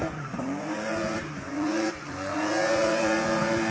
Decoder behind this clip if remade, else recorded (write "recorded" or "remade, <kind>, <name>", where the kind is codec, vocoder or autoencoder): remade, vocoder, Vocos